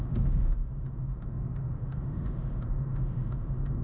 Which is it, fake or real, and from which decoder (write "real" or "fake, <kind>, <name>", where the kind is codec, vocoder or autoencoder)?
fake, autoencoder, DAC-VAE